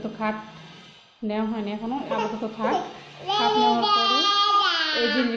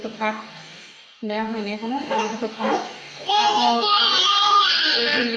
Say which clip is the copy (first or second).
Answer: second